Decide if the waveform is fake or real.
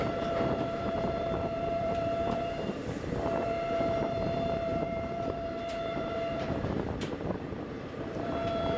fake